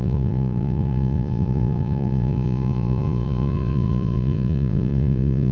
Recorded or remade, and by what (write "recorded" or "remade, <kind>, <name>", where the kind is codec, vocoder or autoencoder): remade, vocoder, Vocos